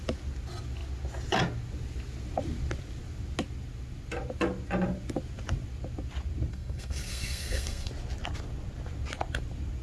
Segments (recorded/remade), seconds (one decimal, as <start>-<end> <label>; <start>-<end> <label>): 0.0-6.5 recorded; 6.5-7.9 remade; 7.9-9.8 recorded